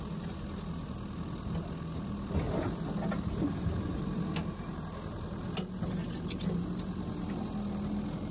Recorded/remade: recorded